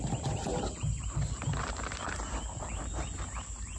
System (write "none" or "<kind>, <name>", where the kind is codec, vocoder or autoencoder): none